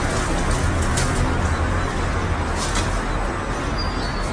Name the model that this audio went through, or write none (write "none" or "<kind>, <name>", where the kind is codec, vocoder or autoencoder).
none